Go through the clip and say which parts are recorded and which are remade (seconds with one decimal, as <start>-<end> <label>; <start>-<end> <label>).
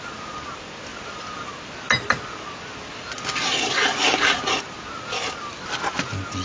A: 0.0-6.4 recorded